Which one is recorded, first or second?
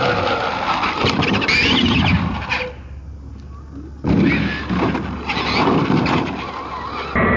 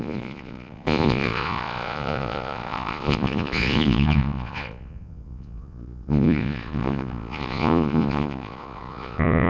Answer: first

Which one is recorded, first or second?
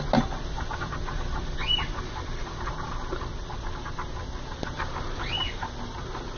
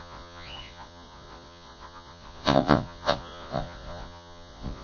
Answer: first